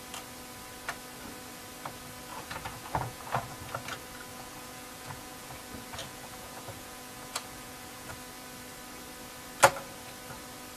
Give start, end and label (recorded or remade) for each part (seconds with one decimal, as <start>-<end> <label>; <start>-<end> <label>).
0.0-2.3 recorded; 2.3-3.6 remade; 3.6-4.3 recorded; 4.3-5.5 remade; 5.5-6.0 recorded; 6.0-8.1 remade; 8.1-10.8 recorded